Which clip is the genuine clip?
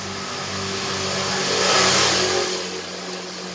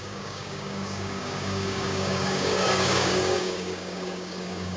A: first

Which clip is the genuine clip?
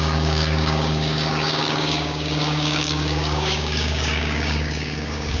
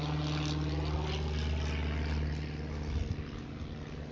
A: second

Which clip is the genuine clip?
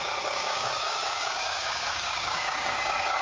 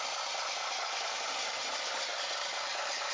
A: second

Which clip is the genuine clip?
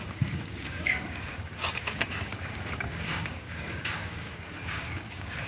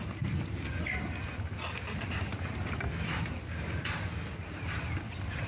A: second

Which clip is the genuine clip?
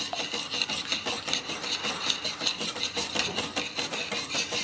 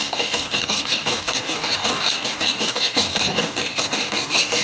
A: first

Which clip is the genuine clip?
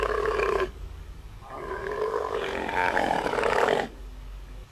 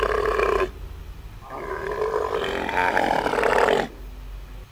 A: second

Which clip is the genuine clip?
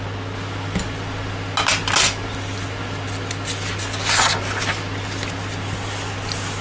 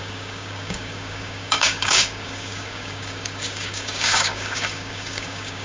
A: first